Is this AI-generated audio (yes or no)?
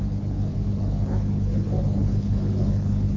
yes